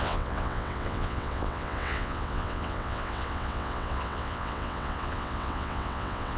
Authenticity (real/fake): fake